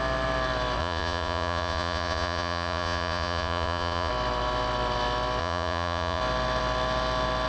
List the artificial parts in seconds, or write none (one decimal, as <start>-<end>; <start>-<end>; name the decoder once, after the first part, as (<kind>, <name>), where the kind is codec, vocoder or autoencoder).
0.8-4.1 (vocoder, Vocos); 5.4-6.2